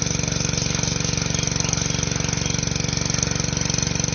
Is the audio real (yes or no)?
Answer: yes